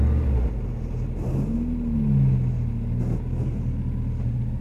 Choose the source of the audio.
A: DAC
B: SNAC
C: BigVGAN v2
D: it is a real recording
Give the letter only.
D